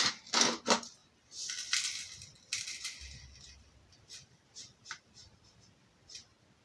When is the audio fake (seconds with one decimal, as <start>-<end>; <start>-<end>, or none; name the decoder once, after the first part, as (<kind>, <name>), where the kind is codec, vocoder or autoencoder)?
none